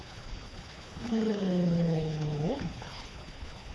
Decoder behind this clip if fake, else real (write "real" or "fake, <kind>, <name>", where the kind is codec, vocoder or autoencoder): fake, codec, HILCodec